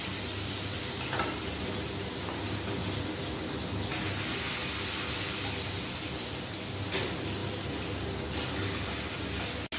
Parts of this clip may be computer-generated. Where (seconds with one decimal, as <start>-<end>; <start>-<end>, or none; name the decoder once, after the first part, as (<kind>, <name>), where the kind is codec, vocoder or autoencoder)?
none